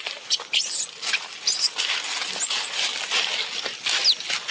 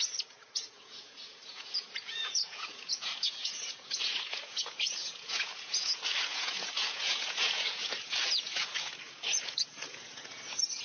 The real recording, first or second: first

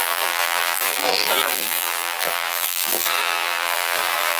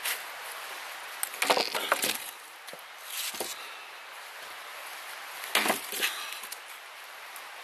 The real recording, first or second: second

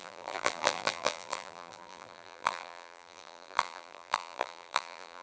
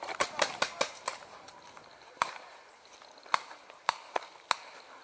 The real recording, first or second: second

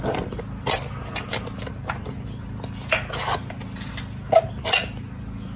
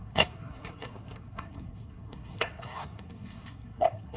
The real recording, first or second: first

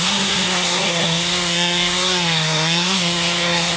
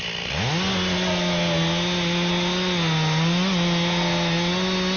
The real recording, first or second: second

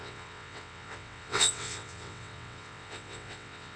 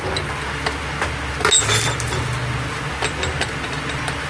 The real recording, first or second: second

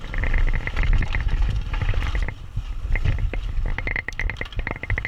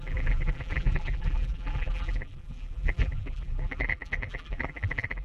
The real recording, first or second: first